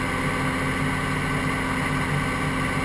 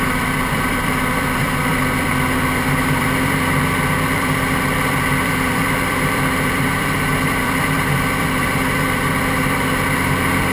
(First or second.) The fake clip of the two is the second